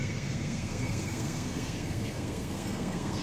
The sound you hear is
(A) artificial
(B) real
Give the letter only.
A